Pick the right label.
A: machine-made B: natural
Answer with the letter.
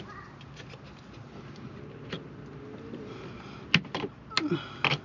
B